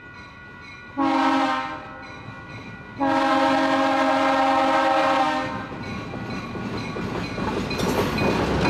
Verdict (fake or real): real